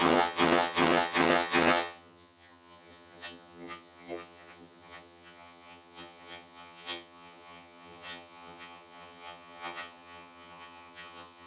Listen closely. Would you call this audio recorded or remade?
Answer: remade